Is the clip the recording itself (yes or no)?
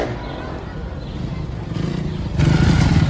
yes